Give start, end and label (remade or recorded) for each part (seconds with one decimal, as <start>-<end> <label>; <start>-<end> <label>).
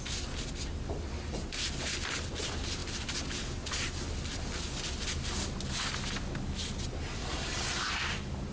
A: 0.0-8.5 recorded